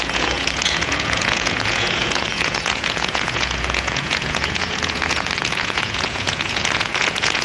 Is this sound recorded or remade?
remade